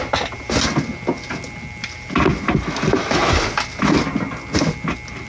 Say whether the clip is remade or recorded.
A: recorded